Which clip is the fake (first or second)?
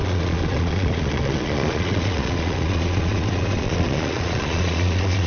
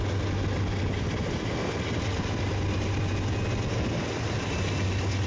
first